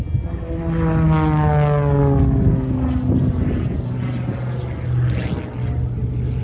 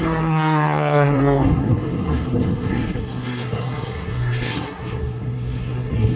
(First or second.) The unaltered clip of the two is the first